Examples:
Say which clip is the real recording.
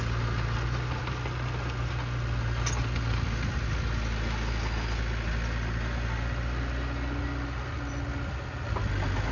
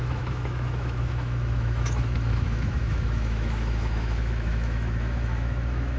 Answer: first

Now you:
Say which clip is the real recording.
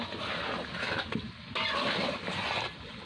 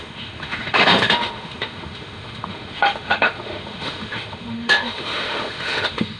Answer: first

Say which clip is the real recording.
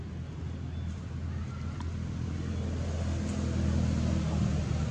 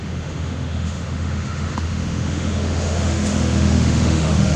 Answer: first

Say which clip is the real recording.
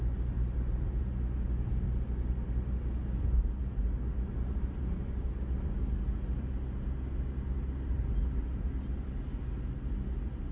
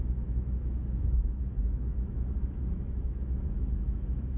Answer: first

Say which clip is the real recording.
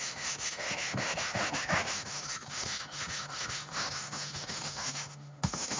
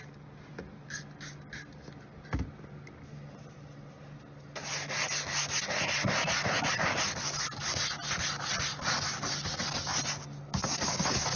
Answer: second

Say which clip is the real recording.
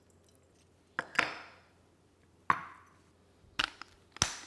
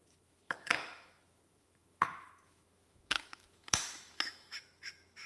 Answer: first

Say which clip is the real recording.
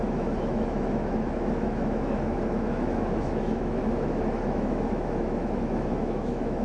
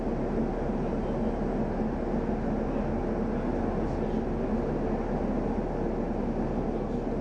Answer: second